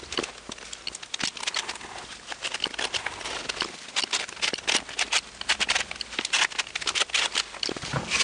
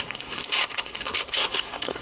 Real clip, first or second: first